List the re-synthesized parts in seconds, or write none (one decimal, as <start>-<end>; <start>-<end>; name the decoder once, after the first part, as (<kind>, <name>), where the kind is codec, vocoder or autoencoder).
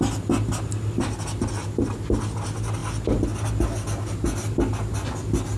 none